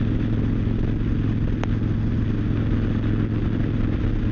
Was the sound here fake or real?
real